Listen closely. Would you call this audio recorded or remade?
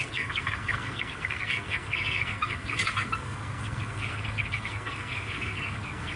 remade